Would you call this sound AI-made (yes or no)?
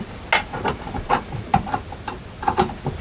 no